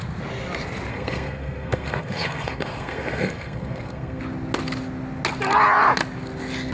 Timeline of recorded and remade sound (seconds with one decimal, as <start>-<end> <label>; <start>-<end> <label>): 0.0-0.9 recorded; 0.9-4.2 remade; 4.2-6.7 recorded